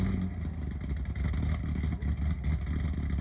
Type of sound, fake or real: real